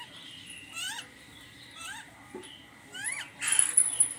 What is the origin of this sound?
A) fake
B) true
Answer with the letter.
B